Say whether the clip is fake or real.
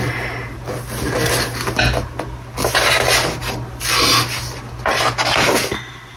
real